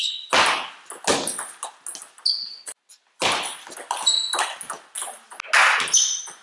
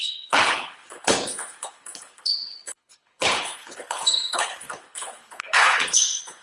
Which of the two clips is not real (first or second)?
second